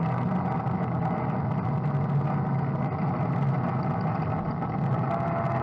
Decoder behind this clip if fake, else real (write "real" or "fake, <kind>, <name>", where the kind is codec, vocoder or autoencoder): real